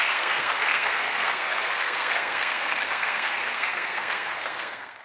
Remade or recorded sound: remade